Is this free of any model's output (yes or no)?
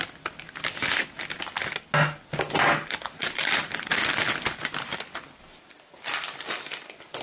yes